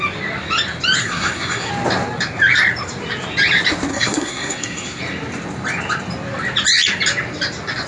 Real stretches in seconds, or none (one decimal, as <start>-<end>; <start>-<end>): 0.0-1.0; 1.7-3.9; 5.0-7.9